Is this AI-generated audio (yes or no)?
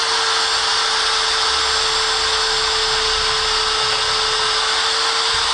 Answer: no